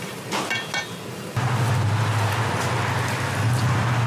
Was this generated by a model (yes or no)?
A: no